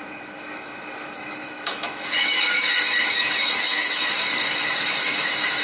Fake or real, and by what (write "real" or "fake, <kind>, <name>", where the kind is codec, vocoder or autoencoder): fake, autoencoder, DAC-VAE